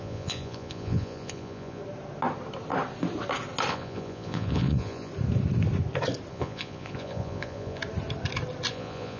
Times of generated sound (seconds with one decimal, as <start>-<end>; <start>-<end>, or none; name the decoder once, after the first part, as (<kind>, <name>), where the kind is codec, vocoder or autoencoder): 0.0-1.8 (vocoder, Vocos); 3.7-5.1; 6.3-7.8; 8.7-9.2